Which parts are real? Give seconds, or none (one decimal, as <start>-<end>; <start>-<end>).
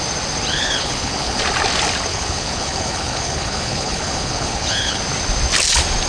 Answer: 0.0-0.5; 1.4-2.1; 5.0-6.1